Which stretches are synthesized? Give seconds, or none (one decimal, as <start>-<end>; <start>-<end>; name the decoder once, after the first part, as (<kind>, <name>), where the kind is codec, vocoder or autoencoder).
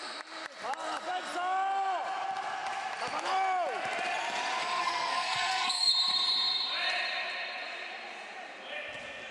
4.6-5.9 (codec, SNAC)